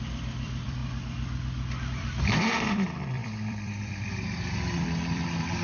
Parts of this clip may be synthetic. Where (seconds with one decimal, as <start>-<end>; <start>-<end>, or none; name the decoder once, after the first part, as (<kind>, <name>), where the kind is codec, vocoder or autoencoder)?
0.0-0.8 (vocoder, BigVGAN v2); 1.9-5.6